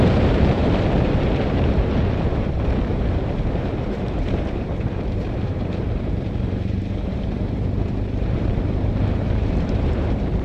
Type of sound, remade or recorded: remade